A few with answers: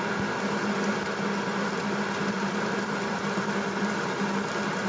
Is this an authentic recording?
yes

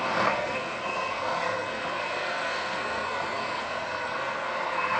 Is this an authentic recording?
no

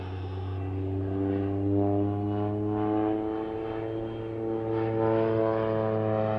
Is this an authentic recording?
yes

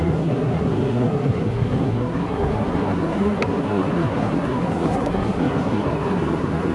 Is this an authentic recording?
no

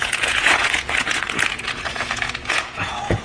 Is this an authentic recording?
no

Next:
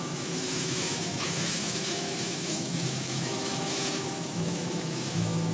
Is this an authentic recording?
no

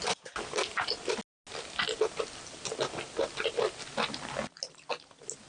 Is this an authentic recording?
yes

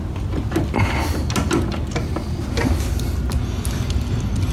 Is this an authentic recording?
yes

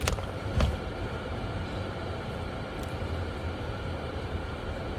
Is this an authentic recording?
no